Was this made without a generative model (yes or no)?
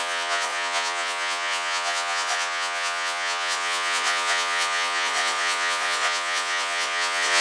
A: no